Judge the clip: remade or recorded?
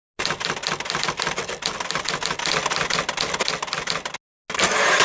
recorded